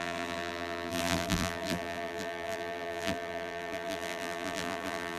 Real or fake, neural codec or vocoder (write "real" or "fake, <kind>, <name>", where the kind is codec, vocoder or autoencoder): fake, vocoder, BigVGAN v2